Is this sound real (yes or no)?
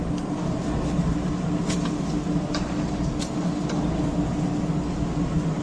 yes